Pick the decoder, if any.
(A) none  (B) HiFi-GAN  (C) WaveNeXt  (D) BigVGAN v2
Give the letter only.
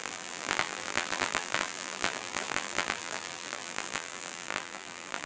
D